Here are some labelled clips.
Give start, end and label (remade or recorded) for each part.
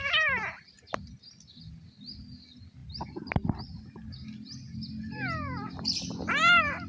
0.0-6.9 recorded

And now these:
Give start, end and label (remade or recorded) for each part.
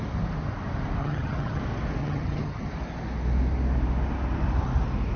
0.0-1.0 recorded; 1.0-1.6 remade; 1.6-2.0 recorded; 2.0-2.7 remade; 2.7-5.2 recorded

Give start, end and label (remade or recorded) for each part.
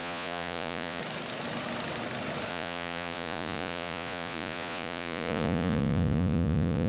0.0-1.0 remade; 1.0-2.5 recorded; 2.5-6.9 remade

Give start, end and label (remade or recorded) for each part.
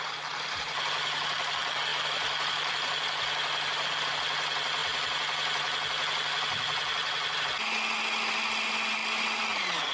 0.0-9.9 recorded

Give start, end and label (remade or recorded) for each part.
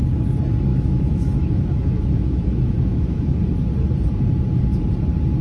0.0-0.7 recorded; 0.7-3.4 remade; 3.4-5.4 recorded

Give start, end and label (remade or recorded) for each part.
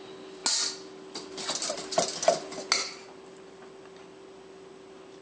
0.0-5.2 recorded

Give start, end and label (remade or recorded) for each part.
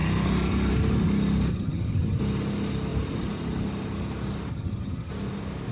0.0-1.5 recorded; 1.5-2.2 remade; 2.2-4.5 recorded; 4.5-5.1 remade; 5.1-5.7 recorded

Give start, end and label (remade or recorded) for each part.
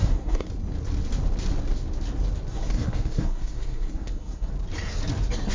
0.0-0.5 remade; 0.5-2.5 recorded; 2.5-4.5 remade; 4.5-5.5 recorded